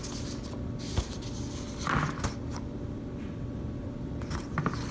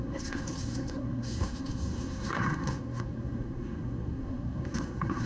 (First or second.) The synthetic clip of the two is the second